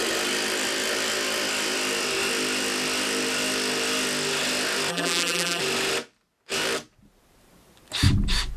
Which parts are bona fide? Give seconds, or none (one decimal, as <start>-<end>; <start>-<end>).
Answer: 0.0-4.9; 5.6-8.6